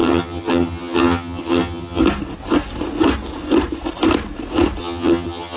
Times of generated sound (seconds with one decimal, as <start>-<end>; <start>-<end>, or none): 0.0-2.0; 4.8-5.6